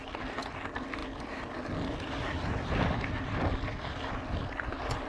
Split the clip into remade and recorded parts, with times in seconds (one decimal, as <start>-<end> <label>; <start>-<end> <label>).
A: 0.0-5.1 recorded